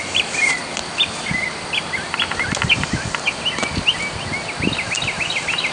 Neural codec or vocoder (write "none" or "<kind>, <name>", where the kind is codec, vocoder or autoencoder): none